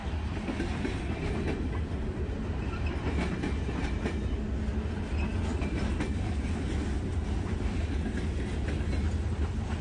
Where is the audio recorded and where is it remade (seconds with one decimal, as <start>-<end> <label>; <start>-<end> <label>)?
0.0-9.8 recorded